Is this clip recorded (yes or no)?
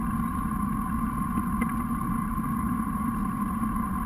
no